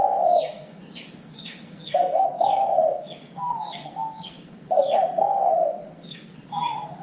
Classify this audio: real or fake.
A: fake